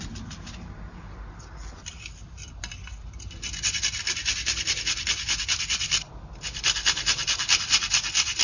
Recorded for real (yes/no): yes